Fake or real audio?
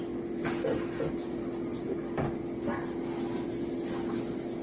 real